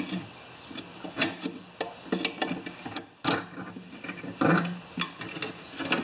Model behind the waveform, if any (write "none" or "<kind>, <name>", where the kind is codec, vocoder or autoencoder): none